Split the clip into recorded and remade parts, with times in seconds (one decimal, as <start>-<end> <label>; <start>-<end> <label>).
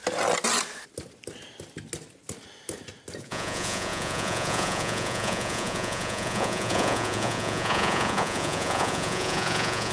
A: 0.0-3.2 recorded; 3.2-9.9 remade